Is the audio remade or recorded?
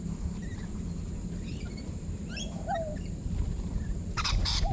remade